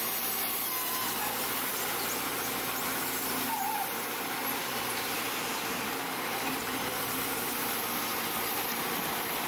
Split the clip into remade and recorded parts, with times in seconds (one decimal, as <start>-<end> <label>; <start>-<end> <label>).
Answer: 0.0-8.1 remade; 8.1-8.6 recorded; 8.6-9.5 remade